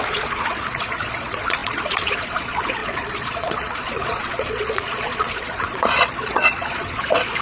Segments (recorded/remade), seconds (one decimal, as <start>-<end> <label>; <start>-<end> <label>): 0.0-7.4 remade